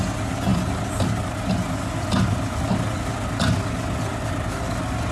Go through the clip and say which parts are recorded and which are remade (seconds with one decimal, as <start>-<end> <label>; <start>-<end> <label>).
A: 0.0-5.1 recorded